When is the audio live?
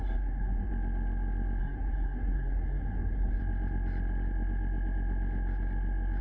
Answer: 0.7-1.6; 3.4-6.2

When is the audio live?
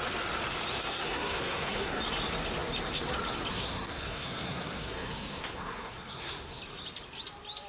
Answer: 0.0-0.8; 2.0-3.5; 6.6-7.7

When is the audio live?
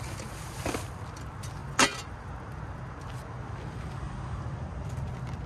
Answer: 0.0-5.5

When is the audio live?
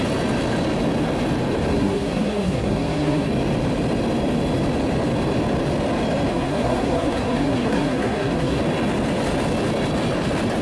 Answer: 0.0-1.7; 3.3-6.3; 8.6-10.6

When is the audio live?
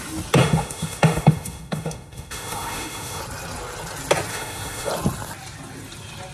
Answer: 0.0-0.4; 3.2-4.3; 4.9-6.3